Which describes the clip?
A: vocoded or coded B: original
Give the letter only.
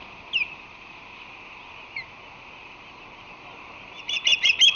B